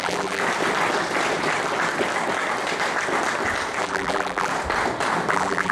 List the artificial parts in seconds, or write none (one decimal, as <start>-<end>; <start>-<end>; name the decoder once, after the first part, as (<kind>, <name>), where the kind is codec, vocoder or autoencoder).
0.0-0.4 (vocoder, BigVGAN v2); 3.8-4.5; 5.3-5.7